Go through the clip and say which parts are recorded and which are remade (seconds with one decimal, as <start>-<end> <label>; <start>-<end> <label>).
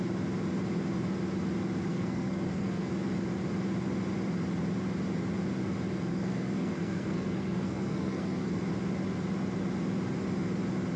0.0-1.9 recorded; 1.9-2.9 remade; 2.9-6.1 recorded; 6.1-8.6 remade; 8.6-11.0 recorded